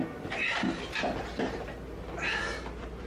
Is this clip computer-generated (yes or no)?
no